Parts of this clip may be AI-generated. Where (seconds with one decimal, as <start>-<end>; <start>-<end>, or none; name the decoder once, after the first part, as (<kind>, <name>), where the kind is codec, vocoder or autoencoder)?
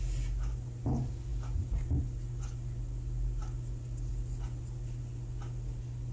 none